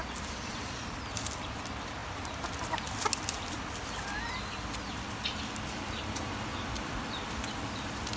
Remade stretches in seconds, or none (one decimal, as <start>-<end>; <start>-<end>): none